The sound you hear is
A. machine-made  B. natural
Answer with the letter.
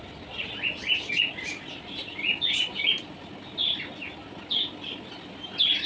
B